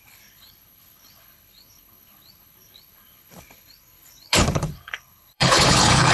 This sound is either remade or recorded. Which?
remade